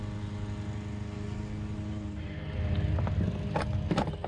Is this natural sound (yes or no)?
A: yes